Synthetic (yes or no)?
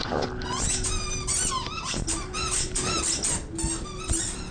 no